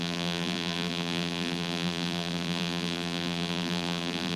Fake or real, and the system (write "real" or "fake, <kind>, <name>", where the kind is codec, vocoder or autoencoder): fake, vocoder, BigVGAN v2